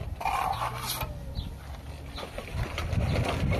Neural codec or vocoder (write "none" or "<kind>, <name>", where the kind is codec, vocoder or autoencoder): none